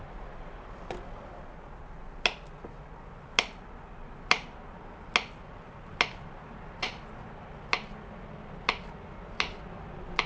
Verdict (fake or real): real